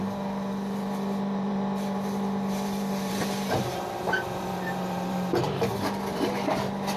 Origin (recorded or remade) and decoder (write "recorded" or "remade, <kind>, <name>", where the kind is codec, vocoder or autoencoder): remade, vocoder, BigVGAN v2